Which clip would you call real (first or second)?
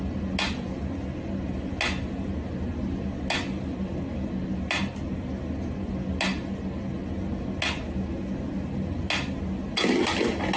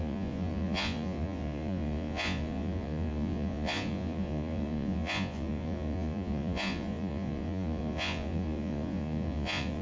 first